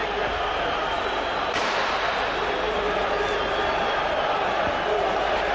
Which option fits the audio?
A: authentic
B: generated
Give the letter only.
A